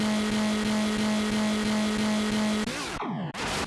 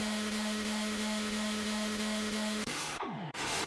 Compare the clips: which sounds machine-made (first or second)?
second